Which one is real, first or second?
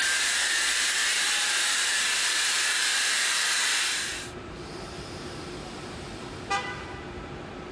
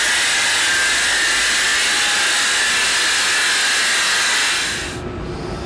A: second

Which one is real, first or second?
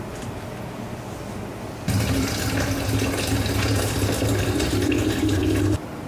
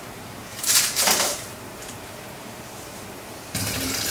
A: first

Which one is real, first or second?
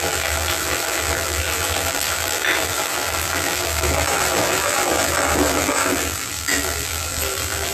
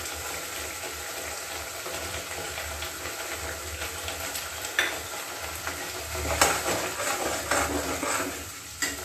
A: second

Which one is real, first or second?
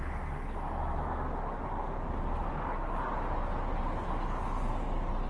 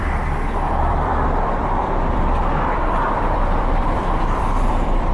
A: first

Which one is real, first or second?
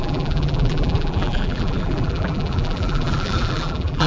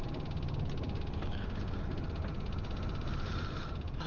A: second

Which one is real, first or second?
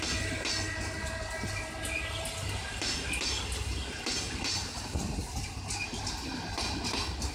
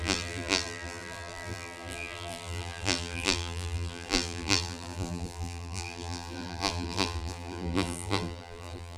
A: first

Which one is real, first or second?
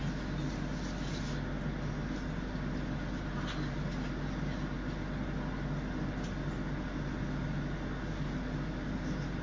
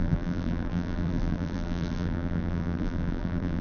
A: first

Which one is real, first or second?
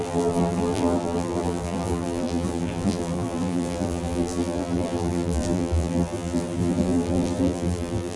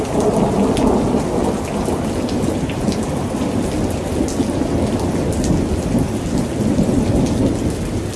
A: second